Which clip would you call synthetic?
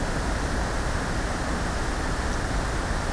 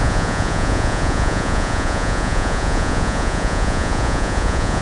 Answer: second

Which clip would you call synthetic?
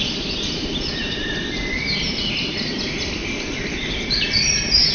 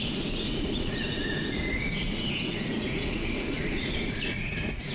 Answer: second